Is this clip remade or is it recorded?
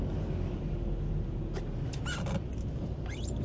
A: recorded